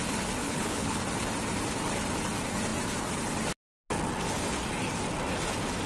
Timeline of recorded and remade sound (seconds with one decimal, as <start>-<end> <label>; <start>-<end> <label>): 0.0-0.4 recorded; 0.4-1.0 remade; 1.0-5.9 recorded